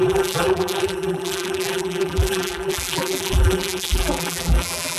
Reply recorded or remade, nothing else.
remade